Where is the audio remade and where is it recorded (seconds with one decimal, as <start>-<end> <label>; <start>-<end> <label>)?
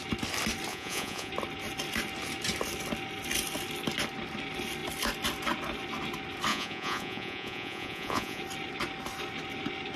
0.0-0.7 recorded; 0.7-1.3 remade; 1.3-6.5 recorded; 6.5-8.4 remade; 8.4-10.0 recorded